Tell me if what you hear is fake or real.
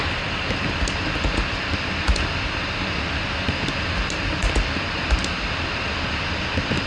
real